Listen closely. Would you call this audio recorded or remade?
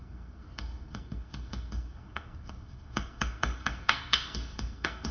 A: remade